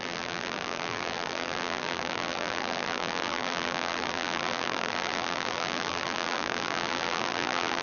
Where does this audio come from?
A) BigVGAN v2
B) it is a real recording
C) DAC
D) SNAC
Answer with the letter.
A